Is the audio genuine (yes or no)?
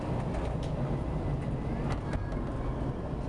yes